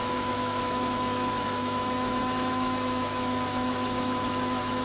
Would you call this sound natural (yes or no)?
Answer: no